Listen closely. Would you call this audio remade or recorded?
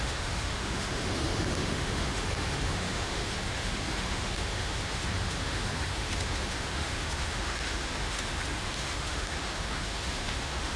remade